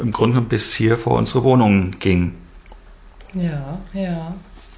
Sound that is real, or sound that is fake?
real